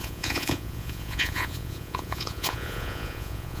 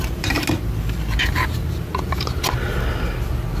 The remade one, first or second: first